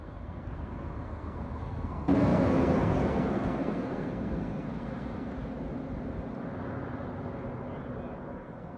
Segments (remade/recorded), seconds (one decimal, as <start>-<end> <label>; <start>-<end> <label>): 0.0-5.3 remade; 5.3-8.2 recorded; 8.2-8.8 remade